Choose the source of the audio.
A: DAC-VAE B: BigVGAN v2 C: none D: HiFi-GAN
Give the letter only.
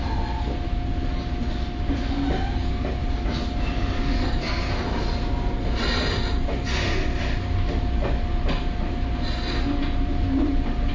C